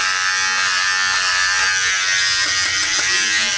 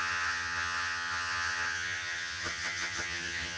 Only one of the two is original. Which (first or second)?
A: first